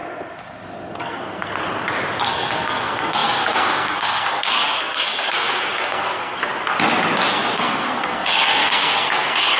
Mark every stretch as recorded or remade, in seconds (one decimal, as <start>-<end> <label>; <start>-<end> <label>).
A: 0.0-1.0 recorded; 1.0-1.5 remade; 1.5-2.2 recorded; 2.2-6.4 remade; 6.4-7.3 recorded; 7.3-9.6 remade